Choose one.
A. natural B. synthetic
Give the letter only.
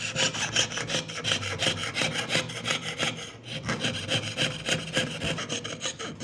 A